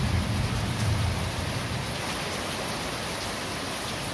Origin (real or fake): real